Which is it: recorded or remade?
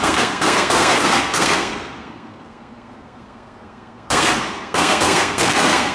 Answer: remade